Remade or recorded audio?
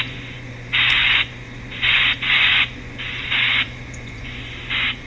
remade